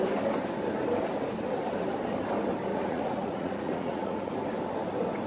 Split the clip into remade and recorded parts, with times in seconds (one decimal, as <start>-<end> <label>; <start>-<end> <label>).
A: 0.0-2.7 recorded; 2.7-4.3 remade; 4.3-5.3 recorded